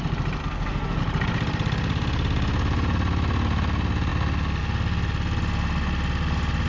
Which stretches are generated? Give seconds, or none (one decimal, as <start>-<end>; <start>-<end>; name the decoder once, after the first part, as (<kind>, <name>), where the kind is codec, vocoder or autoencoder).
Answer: 0.4-1.0 (codec, SNAC)